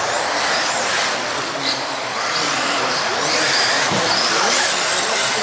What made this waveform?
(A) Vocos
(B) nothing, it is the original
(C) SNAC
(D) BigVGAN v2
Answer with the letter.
D